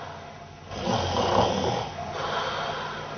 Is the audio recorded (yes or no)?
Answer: yes